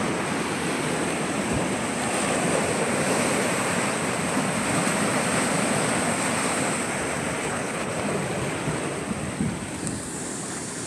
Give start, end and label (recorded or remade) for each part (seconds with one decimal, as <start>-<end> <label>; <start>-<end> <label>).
0.0-7.4 recorded; 7.4-7.9 remade; 7.9-10.9 recorded